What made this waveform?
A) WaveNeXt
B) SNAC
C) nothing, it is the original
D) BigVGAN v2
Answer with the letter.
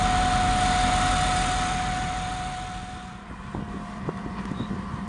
C